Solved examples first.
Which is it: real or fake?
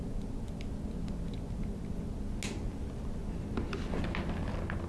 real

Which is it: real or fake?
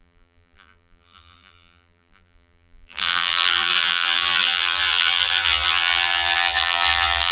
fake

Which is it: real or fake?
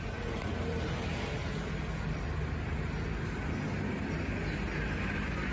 real